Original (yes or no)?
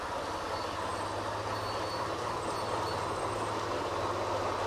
yes